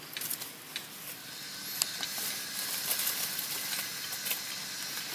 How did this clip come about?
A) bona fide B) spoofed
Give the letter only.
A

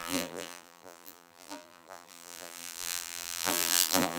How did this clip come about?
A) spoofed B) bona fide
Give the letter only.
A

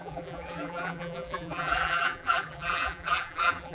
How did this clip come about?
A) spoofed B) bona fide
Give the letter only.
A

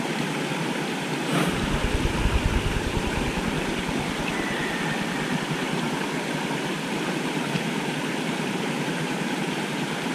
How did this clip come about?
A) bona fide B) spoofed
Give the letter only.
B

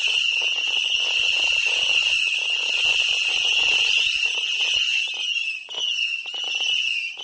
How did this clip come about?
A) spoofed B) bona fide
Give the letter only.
B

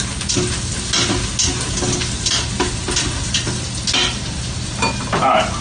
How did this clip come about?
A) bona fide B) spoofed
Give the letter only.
A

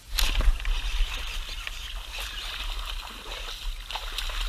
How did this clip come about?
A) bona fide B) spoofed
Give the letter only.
A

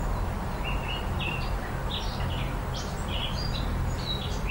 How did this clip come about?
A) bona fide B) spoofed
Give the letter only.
A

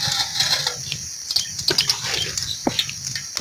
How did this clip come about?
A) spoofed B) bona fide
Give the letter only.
B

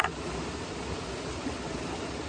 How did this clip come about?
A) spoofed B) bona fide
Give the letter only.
B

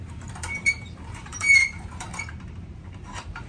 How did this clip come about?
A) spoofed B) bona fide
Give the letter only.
A